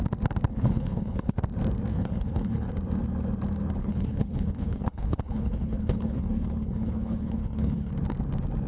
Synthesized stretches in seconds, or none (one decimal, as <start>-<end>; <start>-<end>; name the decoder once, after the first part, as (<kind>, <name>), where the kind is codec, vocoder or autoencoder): 0.5-1.4 (codec, HILCodec); 1.9-2.7; 3.8-7.9